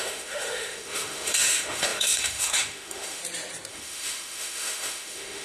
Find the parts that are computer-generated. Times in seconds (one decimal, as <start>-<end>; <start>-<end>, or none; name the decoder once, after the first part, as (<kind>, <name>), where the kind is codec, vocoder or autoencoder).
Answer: 0.0-3.2 (autoencoder, DAC-VAE); 3.7-5.4